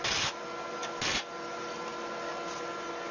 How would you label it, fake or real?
real